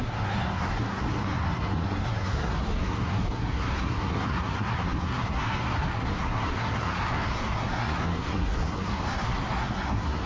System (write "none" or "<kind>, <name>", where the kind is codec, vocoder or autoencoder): codec, SNAC